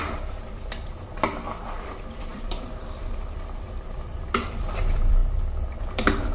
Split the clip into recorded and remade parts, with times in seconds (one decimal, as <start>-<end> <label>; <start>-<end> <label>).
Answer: 0.0-5.2 remade; 5.2-5.8 recorded; 5.8-6.3 remade